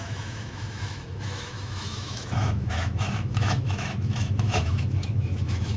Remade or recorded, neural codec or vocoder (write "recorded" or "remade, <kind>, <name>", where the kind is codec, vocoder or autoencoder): remade, autoencoder, DAC-VAE